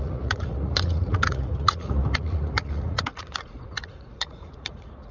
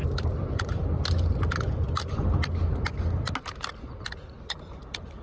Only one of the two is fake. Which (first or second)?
first